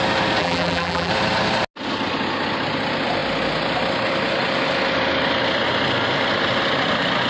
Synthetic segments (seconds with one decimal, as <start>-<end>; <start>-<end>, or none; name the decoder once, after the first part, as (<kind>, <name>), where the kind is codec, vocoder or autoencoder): 0.4-1.1 (vocoder, BigVGAN v2)